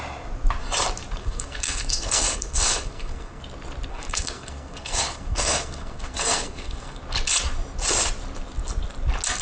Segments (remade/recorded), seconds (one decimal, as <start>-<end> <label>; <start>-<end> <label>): 0.0-1.2 recorded; 1.2-3.4 remade; 3.4-3.9 recorded; 3.9-7.0 remade; 7.0-9.4 recorded